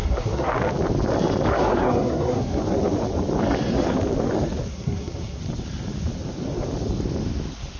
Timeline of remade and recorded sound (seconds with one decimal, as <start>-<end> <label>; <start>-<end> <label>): 0.0-0.5 remade; 0.5-1.5 recorded; 1.5-2.6 remade; 2.6-4.7 recorded; 4.7-5.4 remade; 5.4-7.8 recorded